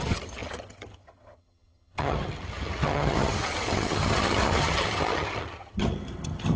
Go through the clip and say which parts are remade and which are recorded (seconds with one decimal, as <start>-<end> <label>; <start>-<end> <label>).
0.0-6.6 remade